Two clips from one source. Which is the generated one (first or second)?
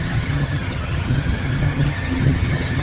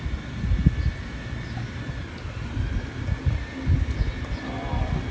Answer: first